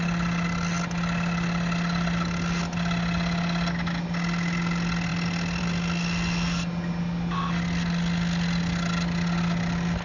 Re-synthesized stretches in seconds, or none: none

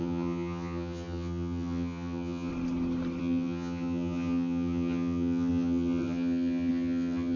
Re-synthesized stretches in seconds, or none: 0.0-2.5 (vocoder, HiFi-GAN); 3.2-7.4

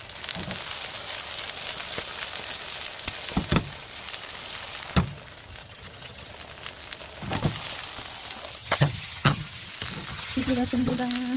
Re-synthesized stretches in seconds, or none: 5.6-6.3 (vocoder, HiFi-GAN); 8.6-9.7; 10.1-10.9

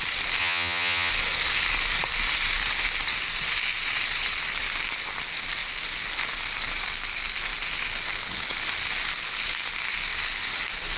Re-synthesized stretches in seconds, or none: 0.4-1.1 (vocoder, HiFi-GAN)